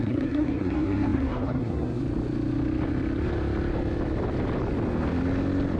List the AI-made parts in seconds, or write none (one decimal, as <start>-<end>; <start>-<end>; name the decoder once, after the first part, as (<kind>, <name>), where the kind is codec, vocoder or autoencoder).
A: 0.0-2.0 (codec, SNAC)